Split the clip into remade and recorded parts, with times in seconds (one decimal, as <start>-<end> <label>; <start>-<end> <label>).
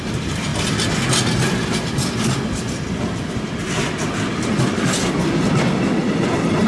0.0-6.7 recorded